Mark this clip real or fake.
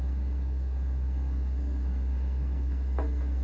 fake